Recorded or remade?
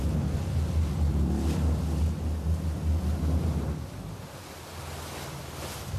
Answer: recorded